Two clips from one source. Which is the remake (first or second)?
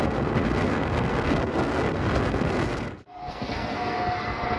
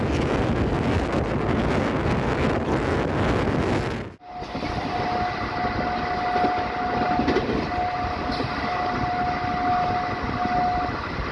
first